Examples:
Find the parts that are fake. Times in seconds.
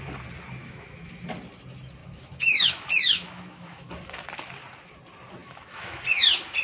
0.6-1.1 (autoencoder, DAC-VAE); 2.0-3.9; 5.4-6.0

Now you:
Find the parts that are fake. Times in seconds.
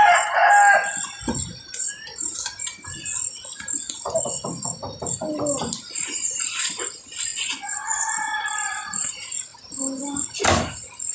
7.3-8.0 (vocoder, Vocos)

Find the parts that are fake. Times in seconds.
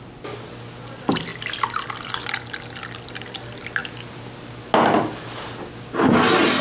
none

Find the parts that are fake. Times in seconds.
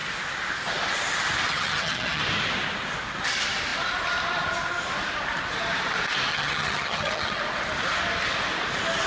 1.5-2.2 (vocoder, HiFi-GAN); 6.3-7.4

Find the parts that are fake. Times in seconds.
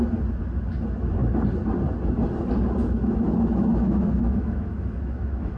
2.8-5.6 (autoencoder, DAC-VAE)